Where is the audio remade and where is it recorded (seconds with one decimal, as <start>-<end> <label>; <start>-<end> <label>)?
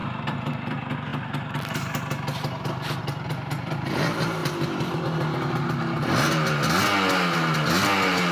0.0-0.5 remade; 0.5-8.3 recorded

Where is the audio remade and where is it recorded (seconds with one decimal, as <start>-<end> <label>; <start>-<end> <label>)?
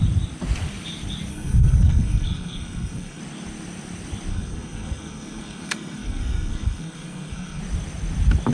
0.0-1.3 recorded; 1.3-3.2 remade; 3.2-4.3 recorded; 4.3-7.6 remade; 7.6-8.5 recorded